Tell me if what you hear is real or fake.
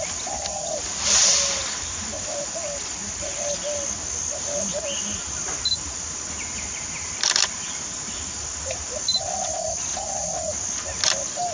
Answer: real